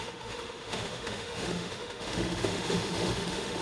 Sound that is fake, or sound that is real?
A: fake